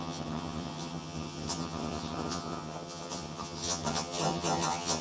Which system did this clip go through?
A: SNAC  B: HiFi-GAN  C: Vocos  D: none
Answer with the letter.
B